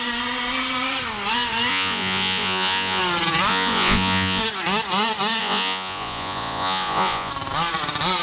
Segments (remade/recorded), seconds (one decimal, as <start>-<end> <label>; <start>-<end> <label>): 0.0-1.7 recorded; 1.7-3.0 remade; 3.0-3.5 recorded; 3.5-4.4 remade; 4.4-5.4 recorded; 5.4-7.3 remade; 7.3-8.2 recorded